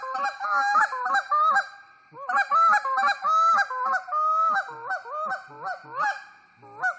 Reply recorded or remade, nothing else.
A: recorded